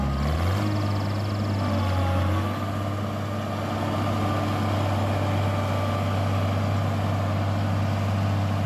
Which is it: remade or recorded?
recorded